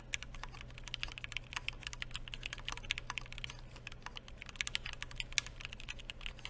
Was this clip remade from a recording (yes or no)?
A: no